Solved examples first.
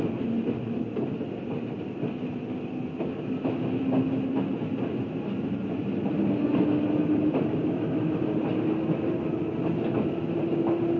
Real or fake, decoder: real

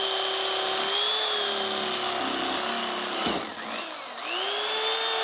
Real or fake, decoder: real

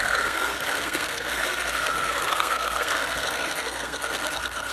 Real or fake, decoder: fake, codec, SNAC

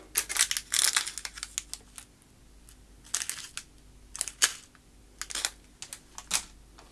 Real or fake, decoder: real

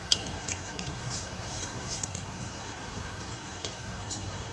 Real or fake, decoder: fake, codec, SNAC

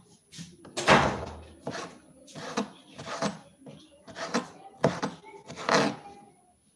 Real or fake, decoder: real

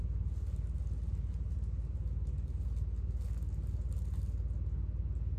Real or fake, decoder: real